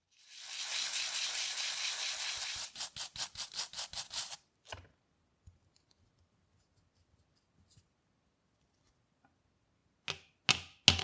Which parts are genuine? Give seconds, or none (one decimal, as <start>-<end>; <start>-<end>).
0.0-11.0